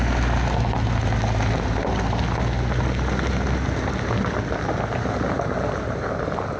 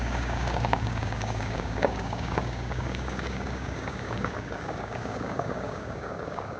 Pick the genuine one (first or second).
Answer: first